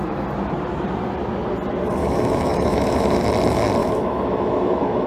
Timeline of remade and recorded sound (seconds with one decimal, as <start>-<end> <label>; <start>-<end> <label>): 0.0-2.0 recorded; 2.0-3.3 remade; 3.3-3.8 recorded; 3.8-5.1 remade